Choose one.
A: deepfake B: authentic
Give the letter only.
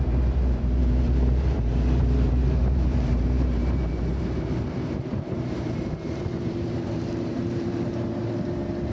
A